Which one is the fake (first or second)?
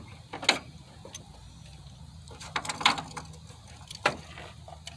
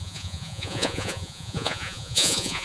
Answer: second